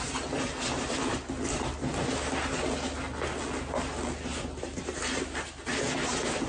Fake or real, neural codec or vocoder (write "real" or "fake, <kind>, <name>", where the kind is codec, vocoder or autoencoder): real